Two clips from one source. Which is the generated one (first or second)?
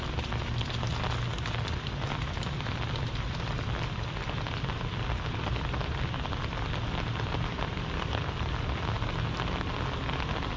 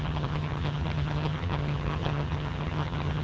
second